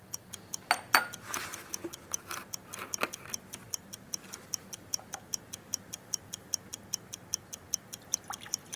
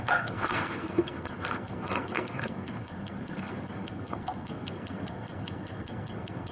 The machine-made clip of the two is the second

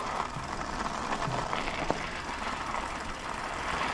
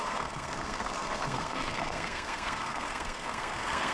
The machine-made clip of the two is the second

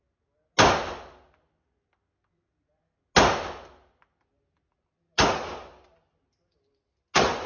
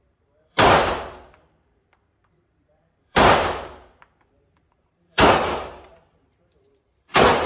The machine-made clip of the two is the second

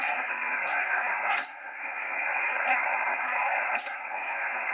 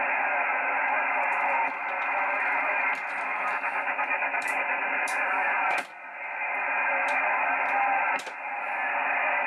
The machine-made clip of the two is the first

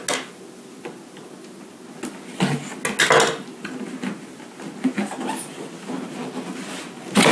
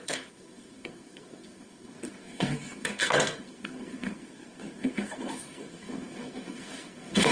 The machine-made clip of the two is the second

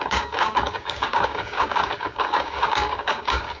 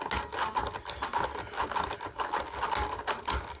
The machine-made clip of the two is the first